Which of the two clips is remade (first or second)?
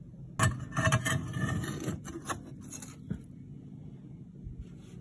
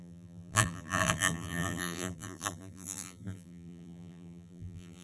second